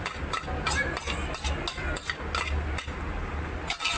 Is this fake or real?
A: real